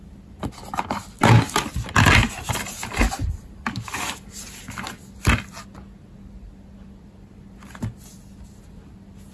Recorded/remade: recorded